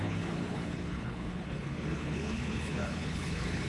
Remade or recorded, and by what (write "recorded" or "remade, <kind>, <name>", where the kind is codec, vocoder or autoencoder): remade, codec, HILCodec